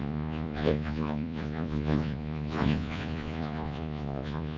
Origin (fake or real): fake